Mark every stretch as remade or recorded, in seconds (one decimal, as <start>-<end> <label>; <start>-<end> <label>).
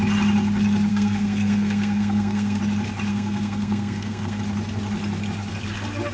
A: 0.0-0.9 recorded; 0.9-2.6 remade; 2.6-3.1 recorded; 3.1-4.4 remade; 4.4-6.1 recorded